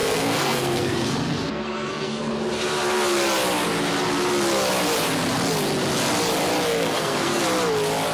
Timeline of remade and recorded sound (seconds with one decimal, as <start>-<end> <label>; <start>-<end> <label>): 0.0-2.3 remade; 2.3-6.7 recorded; 6.7-7.4 remade; 7.4-8.1 recorded